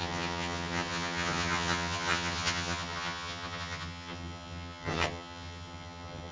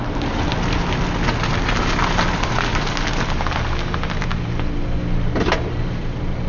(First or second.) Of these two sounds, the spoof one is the first